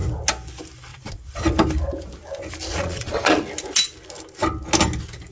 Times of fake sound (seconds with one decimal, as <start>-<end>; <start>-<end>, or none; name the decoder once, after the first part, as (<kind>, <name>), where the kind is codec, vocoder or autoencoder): 0.9-1.4 (vocoder, Vocos); 2.7-3.4